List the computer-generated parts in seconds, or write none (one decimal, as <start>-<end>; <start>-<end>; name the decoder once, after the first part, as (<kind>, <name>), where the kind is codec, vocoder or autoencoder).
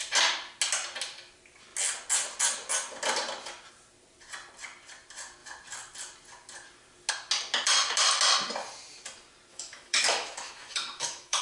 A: 9.5-11.4 (autoencoder, DAC-VAE)